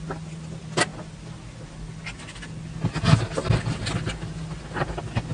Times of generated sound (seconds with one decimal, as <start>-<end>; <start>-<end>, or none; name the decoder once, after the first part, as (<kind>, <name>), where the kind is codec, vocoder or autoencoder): none